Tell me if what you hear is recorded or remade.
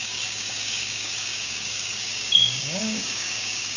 remade